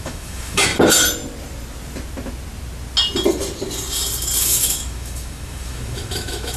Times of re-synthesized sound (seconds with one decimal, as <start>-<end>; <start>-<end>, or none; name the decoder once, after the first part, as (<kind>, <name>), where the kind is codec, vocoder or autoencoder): 0.0-0.7 (autoencoder, DAC-VAE); 4.4-6.6